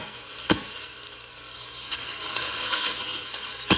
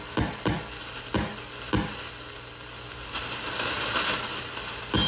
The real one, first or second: second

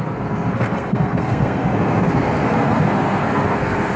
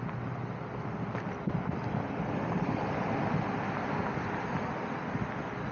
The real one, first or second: second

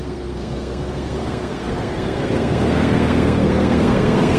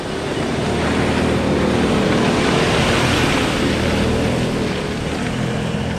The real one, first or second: second